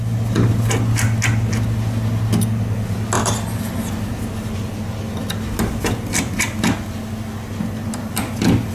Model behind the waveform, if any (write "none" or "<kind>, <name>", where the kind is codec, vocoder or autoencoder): none